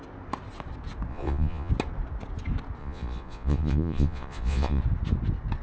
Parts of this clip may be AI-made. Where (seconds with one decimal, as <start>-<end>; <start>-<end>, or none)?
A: 1.1-1.7; 2.8-4.8